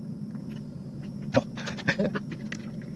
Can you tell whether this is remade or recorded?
recorded